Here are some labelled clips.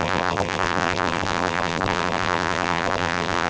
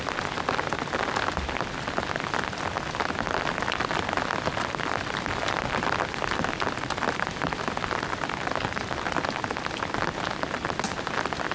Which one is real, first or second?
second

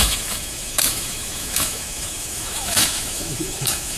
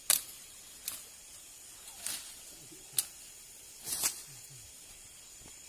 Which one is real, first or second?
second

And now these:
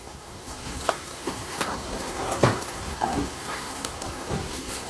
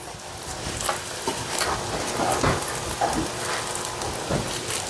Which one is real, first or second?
second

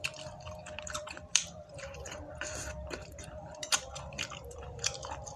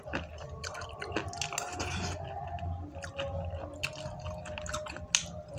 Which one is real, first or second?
second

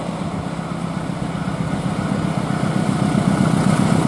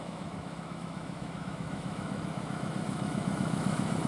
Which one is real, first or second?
first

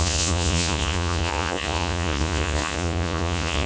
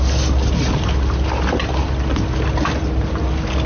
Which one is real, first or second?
second